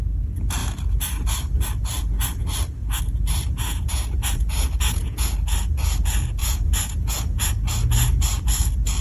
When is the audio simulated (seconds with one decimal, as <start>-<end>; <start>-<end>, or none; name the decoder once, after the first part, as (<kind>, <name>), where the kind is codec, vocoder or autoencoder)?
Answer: 3.6-5.3 (vocoder, Vocos); 6.4-7.5